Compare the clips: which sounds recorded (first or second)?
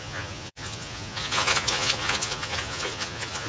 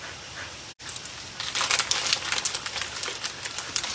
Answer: second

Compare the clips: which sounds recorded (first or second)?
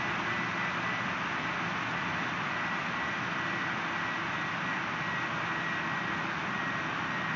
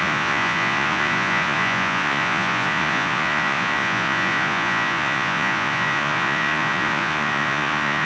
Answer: first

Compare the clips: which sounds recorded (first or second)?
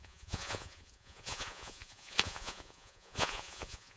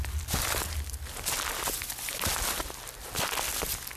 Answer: second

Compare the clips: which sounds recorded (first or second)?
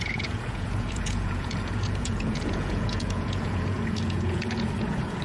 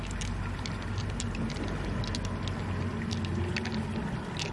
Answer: second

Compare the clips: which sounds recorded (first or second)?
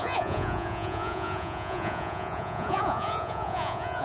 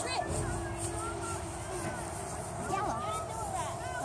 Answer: second